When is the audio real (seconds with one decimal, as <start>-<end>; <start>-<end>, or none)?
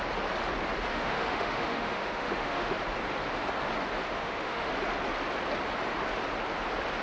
0.0-0.9; 2.7-4.1; 4.7-7.0